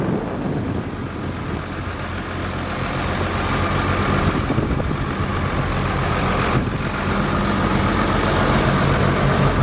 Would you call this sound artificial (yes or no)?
no